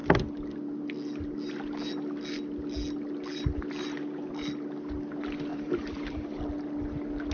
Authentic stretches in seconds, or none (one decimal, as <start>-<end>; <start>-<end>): 0.0-5.5; 6.4-7.3